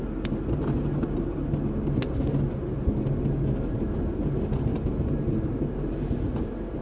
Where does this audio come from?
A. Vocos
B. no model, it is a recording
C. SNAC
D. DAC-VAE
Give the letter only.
B